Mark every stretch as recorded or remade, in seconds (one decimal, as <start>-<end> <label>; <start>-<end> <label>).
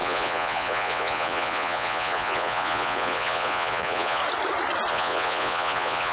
0.0-4.2 remade; 4.2-4.9 recorded; 4.9-6.1 remade